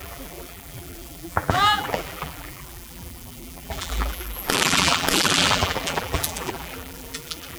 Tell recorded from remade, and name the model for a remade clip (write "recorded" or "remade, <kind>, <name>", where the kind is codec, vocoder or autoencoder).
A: remade, vocoder, BigVGAN v2